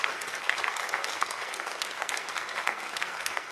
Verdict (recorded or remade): remade